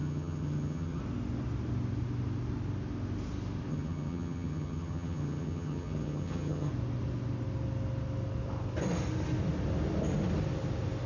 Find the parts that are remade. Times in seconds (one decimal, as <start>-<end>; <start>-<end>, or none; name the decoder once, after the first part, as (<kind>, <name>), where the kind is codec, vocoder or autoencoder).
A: 0.0-1.0 (vocoder, HiFi-GAN); 3.7-6.7